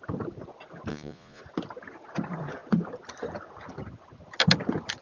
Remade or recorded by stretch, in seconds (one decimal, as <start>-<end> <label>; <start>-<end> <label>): 0.0-0.9 recorded; 0.9-1.4 remade; 1.4-5.0 recorded